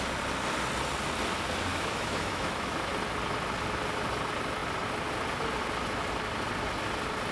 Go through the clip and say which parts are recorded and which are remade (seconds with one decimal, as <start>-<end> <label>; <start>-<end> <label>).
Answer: 0.0-1.7 recorded; 1.7-2.9 remade; 2.9-7.3 recorded